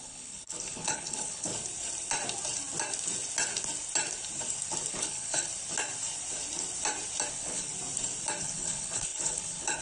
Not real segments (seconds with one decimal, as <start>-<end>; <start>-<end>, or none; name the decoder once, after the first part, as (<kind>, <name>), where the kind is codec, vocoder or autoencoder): 0.0-1.5 (codec, HILCodec); 4.9-5.5; 7.3-7.7; 8.4-9.8